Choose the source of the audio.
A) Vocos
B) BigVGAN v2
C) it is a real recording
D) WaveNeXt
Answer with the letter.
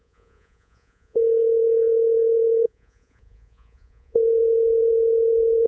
A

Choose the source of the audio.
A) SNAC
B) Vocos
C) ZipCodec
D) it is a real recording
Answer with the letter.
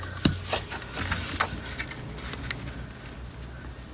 D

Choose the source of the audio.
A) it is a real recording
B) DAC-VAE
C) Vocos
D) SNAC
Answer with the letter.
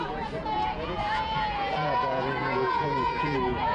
C